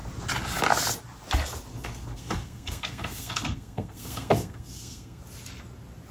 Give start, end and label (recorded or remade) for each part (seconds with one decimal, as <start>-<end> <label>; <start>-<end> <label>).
0.0-1.7 recorded; 1.7-5.2 remade; 5.2-6.1 recorded